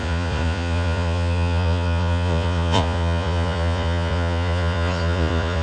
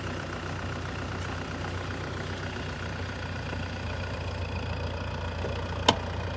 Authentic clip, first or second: second